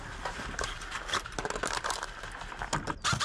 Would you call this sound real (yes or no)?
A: yes